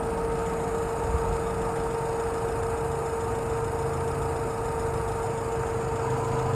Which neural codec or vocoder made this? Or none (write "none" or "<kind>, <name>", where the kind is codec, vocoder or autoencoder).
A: none